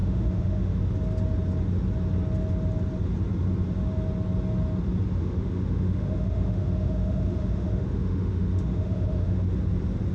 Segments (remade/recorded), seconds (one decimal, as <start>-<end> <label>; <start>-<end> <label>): 0.0-0.8 remade; 0.8-5.2 recorded; 5.2-9.4 remade; 9.4-10.1 recorded

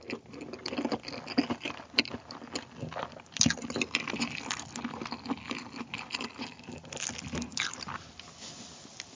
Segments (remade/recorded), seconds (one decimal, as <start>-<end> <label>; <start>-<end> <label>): 0.0-9.1 recorded